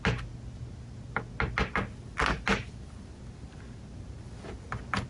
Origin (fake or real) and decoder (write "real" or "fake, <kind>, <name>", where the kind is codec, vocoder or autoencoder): real